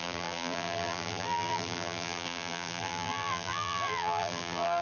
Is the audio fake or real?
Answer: fake